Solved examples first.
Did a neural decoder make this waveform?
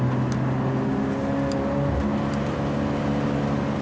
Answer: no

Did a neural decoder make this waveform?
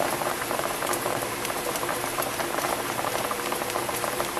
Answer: yes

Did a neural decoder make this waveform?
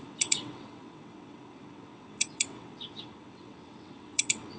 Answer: yes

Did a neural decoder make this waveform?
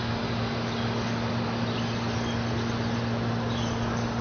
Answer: no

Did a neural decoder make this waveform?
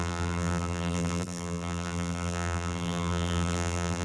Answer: yes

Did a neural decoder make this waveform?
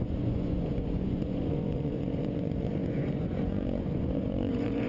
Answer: yes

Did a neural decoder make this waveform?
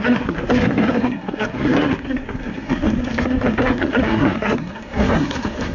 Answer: yes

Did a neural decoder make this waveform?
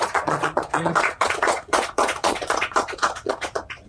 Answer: yes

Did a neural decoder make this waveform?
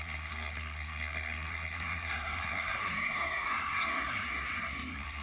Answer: yes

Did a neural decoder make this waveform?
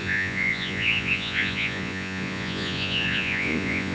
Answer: yes